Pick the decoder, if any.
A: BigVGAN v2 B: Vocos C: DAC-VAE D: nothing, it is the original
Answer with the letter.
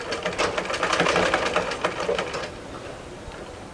D